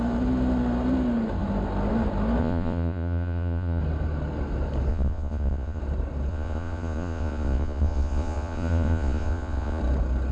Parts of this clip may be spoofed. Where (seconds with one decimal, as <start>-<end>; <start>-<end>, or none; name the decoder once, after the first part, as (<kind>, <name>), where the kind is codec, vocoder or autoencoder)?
2.4-3.8 (vocoder, Vocos); 4.9-5.8; 6.3-9.8